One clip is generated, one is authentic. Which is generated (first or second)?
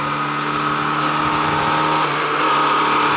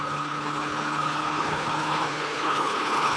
second